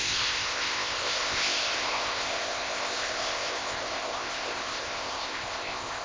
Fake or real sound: fake